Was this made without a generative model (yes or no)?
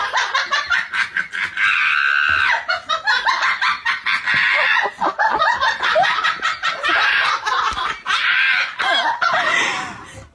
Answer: yes